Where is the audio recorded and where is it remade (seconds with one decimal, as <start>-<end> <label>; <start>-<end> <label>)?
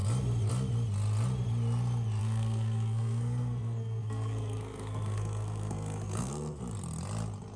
0.0-2.2 recorded; 2.2-6.6 remade; 6.6-7.6 recorded